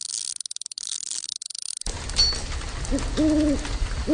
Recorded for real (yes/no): yes